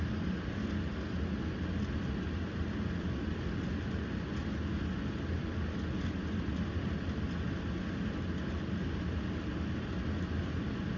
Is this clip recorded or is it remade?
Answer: recorded